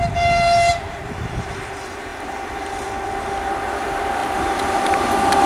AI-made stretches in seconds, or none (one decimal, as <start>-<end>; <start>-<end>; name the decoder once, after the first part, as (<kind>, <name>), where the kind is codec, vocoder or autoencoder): 0.7-1.5 (vocoder, BigVGAN v2); 4.2-5.0